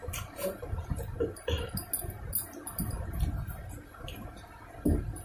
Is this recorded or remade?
recorded